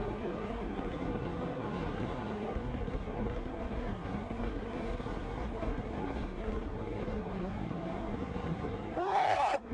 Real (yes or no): no